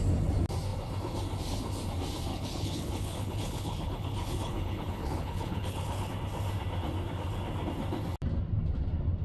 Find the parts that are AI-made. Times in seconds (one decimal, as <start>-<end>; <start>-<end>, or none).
2.3-6.1